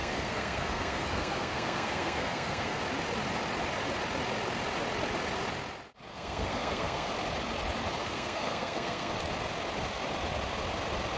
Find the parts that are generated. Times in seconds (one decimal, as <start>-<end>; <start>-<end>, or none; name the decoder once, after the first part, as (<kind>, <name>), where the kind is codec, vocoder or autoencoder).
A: 0.0-2.8 (codec, SNAC); 6.1-7.1; 8.0-9.1